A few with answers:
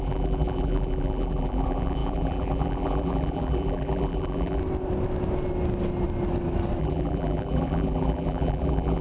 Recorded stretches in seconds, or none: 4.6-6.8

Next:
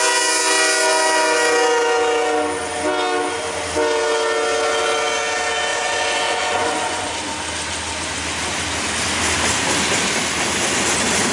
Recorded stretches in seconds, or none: 0.0-5.7; 7.1-11.3

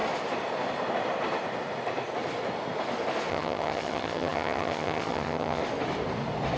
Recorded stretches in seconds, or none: 0.0-3.3; 5.6-6.6

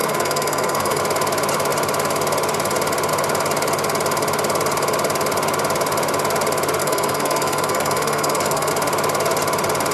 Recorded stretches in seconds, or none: 1.0-6.8; 8.7-9.9

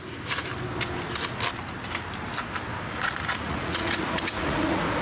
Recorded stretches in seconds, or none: 0.5-2.9

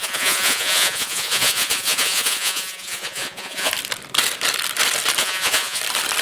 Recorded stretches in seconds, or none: 3.7-5.2; 5.8-6.2